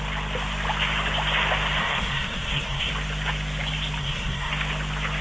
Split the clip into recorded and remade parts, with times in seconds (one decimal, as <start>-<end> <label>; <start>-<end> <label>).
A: 0.0-1.8 recorded; 1.8-2.9 remade; 2.9-4.0 recorded; 4.0-4.5 remade; 4.5-5.2 recorded